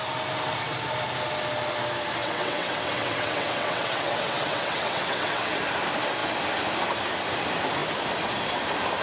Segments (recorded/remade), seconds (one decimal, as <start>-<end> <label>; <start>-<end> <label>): 0.0-2.2 recorded; 2.2-5.6 remade; 5.6-9.0 recorded

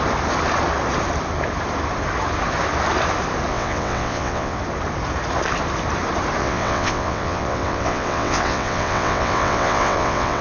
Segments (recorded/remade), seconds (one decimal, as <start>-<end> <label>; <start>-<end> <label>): 0.0-3.5 recorded; 3.5-4.6 remade; 4.6-6.4 recorded; 6.4-10.4 remade